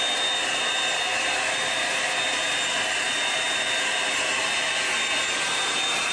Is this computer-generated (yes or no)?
no